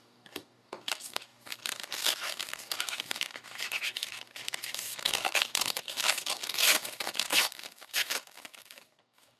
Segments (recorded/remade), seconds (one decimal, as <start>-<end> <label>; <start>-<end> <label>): 0.0-9.4 remade